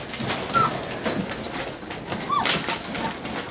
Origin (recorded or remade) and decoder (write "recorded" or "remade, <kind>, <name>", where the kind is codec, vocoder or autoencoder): recorded